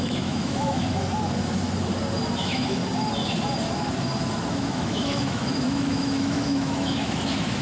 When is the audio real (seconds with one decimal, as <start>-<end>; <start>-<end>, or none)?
0.8-2.4; 2.8-4.5